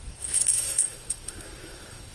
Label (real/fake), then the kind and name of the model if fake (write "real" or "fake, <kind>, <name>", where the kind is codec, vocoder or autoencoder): fake, codec, SNAC